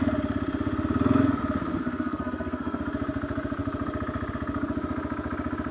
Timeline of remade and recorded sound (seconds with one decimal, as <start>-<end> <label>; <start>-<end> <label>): 0.0-1.6 recorded; 1.6-2.8 remade; 2.8-5.7 recorded